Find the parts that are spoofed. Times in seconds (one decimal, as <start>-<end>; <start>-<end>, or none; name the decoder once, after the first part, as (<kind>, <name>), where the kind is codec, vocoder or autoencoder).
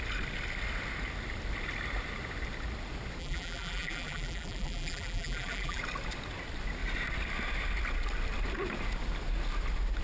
3.2-5.8 (vocoder, BigVGAN v2)